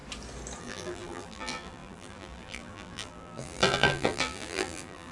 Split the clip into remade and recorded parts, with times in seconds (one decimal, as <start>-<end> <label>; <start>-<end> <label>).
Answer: 0.0-0.6 recorded; 0.6-5.1 remade